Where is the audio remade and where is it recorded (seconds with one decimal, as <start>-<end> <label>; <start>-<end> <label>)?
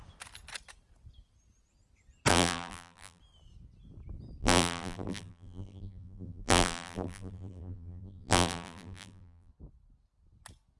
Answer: 0.0-2.3 recorded; 2.3-3.2 remade; 3.2-4.4 recorded; 4.4-9.5 remade; 9.5-10.8 recorded